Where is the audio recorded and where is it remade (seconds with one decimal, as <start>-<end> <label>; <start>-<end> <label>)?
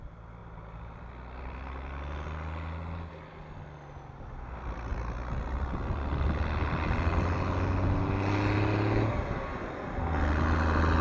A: 0.0-0.4 recorded; 0.4-1.1 remade; 1.1-11.0 recorded